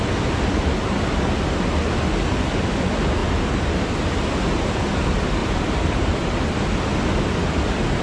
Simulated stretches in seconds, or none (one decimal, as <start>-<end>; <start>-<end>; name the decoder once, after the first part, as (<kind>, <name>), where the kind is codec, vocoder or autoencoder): 3.2-4.3 (vocoder, BigVGAN v2); 5.4-6.4